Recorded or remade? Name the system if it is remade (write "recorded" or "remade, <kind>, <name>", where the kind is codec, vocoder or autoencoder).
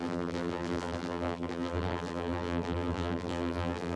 remade, vocoder, BigVGAN v2